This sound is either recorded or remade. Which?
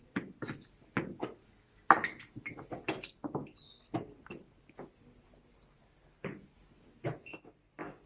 recorded